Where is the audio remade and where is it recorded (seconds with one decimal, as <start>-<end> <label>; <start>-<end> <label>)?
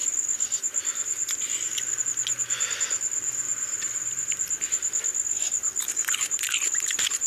0.0-7.3 recorded